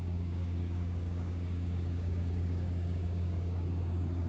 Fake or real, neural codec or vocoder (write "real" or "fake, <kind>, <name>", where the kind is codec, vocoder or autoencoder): fake, codec, DAC